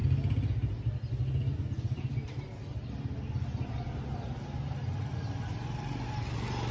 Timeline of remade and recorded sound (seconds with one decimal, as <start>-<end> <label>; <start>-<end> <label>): 0.0-6.7 recorded